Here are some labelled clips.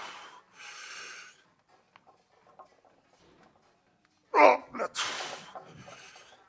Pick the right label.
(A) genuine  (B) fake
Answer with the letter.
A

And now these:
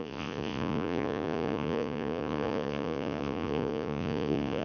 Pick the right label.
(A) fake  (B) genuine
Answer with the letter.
A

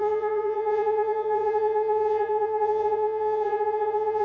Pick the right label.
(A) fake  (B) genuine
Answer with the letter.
A